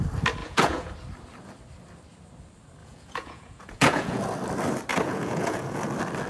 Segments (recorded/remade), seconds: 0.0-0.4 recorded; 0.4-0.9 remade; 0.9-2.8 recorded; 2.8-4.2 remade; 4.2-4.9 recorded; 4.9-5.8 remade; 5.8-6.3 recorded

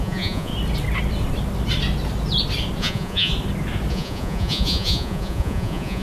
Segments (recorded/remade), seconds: 0.0-0.5 remade; 0.5-2.8 recorded; 2.8-3.3 remade; 3.3-3.9 recorded; 3.9-6.0 remade

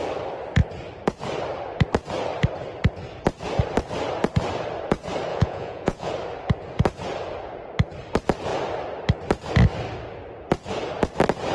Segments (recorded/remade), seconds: 0.0-5.3 recorded; 5.3-6.1 remade; 6.1-11.5 recorded